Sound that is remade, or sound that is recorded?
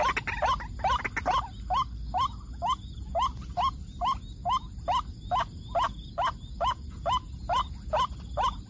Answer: recorded